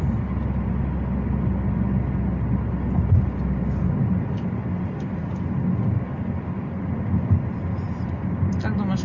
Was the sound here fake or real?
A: real